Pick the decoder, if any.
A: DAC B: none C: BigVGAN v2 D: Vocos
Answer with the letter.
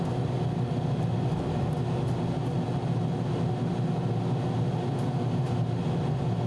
B